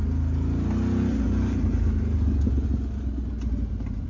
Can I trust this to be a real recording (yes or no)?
yes